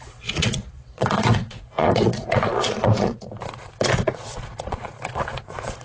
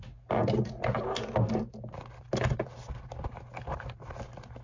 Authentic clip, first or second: second